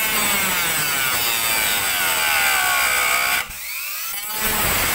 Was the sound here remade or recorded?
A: recorded